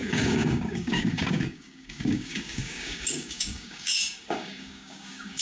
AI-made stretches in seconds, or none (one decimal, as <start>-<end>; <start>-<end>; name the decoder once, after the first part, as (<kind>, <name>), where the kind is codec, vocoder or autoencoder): 0.0-5.4 (codec, DAC)